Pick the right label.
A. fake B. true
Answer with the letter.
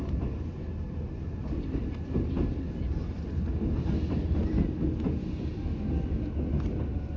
B